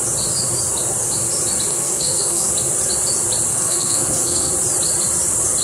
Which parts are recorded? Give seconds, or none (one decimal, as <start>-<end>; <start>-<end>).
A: 0.0-1.7; 2.5-3.5; 4.5-5.6